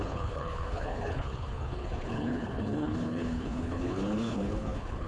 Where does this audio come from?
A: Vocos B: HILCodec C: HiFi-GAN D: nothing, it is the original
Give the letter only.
B